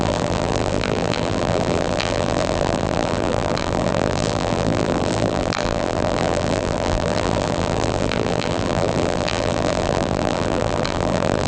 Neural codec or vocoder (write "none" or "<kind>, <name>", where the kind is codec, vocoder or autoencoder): vocoder, BigVGAN v2